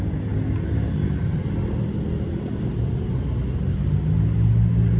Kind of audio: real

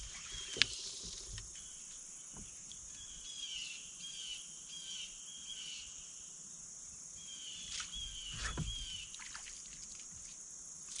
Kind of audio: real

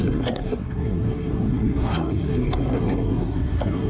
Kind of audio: fake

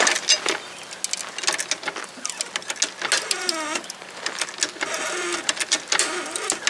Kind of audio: real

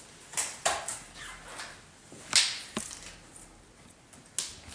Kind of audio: real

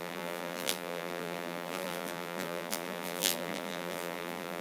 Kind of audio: fake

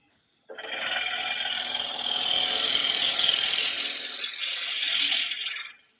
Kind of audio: real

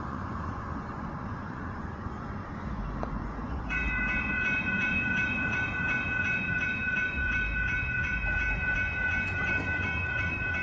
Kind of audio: fake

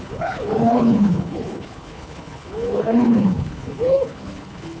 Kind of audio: fake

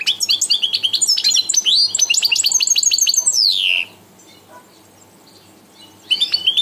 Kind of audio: real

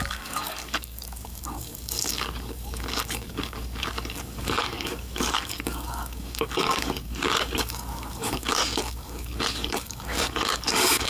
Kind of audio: fake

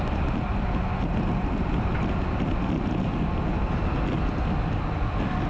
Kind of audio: real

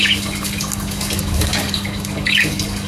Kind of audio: fake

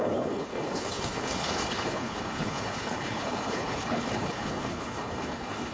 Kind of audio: fake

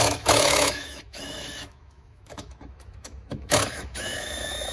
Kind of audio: fake